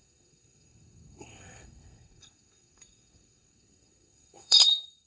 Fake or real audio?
fake